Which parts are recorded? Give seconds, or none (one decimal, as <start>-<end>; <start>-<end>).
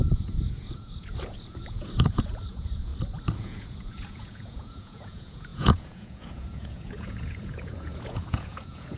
2.9-3.4